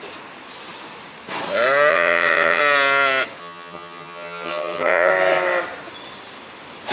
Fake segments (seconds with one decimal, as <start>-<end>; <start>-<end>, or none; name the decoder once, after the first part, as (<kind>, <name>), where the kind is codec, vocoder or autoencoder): 1.9-2.6 (vocoder, HiFi-GAN); 3.4-5.1